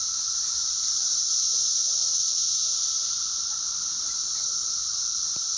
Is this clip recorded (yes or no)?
no